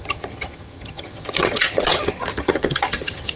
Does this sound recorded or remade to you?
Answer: remade